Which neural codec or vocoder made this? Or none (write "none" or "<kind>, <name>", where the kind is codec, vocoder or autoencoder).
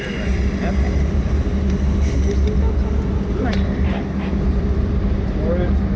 none